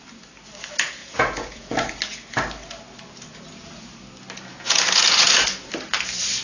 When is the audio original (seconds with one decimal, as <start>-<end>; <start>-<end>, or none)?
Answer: 0.0-1.0; 2.0-4.5; 5.3-6.4